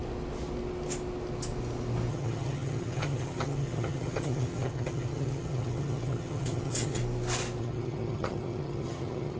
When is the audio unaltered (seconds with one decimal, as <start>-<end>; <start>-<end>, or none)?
0.0-2.1; 7.0-7.6